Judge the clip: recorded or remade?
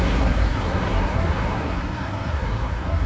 remade